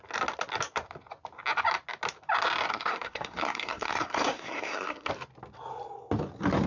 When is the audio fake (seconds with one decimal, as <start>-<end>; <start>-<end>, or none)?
2.7-5.1